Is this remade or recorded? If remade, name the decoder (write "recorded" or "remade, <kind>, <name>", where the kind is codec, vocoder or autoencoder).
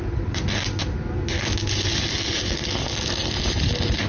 recorded